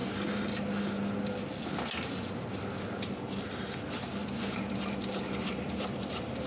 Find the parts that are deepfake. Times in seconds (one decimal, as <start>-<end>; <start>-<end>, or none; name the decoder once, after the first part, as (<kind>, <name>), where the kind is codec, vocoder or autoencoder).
3.0-4.2 (vocoder, BigVGAN v2); 4.9-6.5